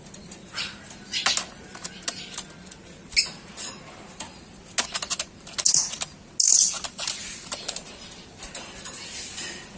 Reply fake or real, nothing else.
real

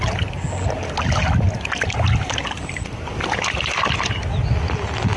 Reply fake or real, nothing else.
real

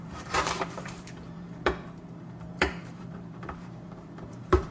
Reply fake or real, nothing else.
fake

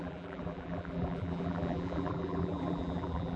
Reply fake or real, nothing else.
fake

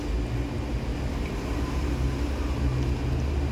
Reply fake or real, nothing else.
real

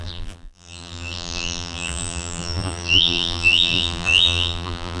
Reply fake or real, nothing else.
fake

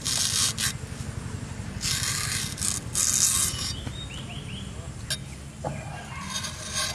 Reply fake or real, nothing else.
real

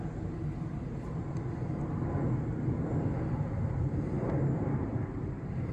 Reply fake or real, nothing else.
fake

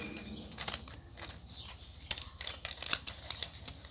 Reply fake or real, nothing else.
real